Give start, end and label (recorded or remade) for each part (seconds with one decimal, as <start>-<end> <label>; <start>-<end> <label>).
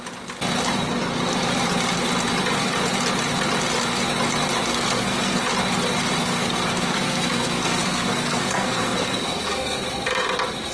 0.0-4.7 recorded; 4.7-5.4 remade; 5.4-6.2 recorded; 6.2-9.8 remade; 9.8-10.7 recorded